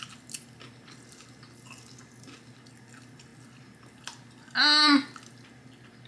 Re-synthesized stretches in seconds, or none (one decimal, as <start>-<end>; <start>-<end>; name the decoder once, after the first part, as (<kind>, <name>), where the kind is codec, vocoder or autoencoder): none